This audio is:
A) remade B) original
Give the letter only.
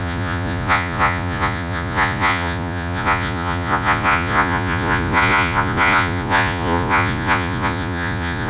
A